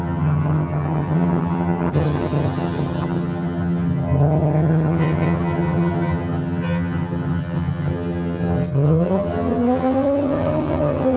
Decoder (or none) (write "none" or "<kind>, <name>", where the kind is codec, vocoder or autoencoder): vocoder, HiFi-GAN